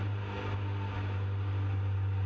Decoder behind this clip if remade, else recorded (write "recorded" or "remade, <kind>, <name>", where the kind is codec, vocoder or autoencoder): recorded